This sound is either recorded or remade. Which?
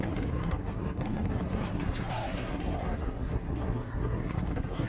remade